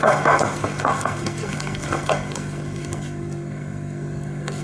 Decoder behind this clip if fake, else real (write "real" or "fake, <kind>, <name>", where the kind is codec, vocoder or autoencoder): fake, codec, SNAC